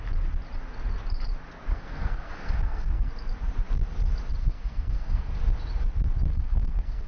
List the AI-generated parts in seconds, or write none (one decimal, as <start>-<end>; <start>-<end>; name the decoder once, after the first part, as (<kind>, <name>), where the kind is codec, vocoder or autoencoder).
1.7-3.1 (codec, SNAC); 4.4-5.3; 6.3-7.1